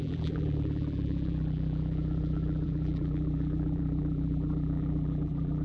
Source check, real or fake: fake